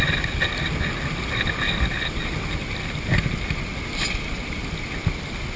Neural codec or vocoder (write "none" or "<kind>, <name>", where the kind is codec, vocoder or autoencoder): none